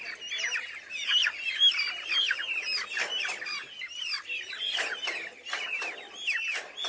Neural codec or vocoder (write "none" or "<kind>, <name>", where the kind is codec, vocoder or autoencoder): none